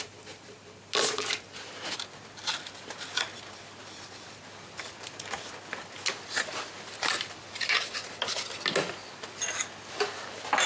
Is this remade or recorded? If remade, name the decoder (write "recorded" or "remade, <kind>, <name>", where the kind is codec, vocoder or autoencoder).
recorded